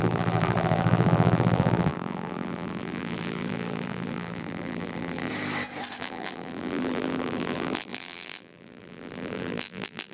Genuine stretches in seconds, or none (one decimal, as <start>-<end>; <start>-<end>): 5.3-6.0